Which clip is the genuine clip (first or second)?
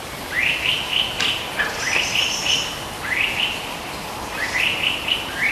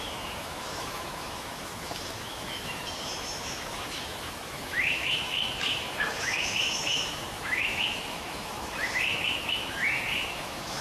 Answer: first